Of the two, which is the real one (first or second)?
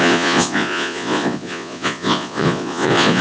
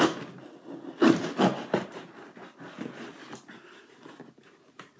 second